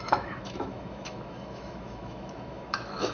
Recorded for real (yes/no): no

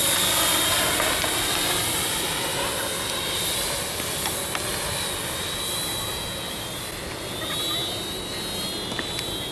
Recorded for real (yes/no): yes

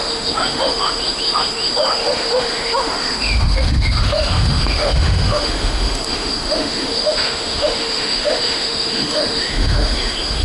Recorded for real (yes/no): no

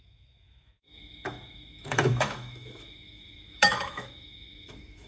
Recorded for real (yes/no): no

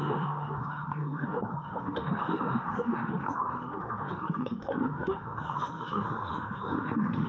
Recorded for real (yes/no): no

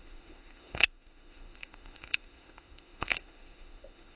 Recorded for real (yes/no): no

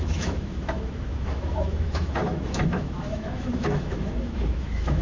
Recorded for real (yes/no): no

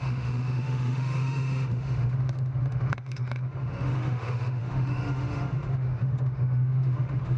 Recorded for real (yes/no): no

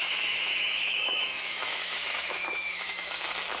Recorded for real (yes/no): no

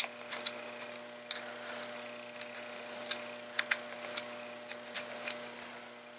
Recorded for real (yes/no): yes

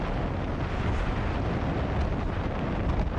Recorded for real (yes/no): yes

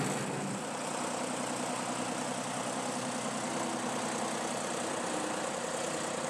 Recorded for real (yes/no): yes